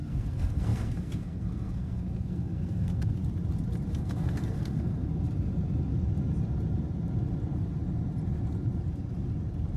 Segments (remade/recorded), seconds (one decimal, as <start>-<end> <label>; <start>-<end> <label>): 0.0-3.2 remade; 3.2-3.9 recorded; 3.9-5.1 remade; 5.1-9.8 recorded